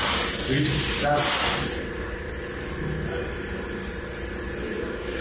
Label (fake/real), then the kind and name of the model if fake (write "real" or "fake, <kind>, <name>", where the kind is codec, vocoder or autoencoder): real